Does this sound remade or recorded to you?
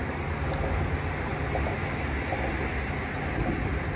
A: recorded